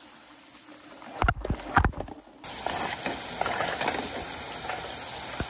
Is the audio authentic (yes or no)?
yes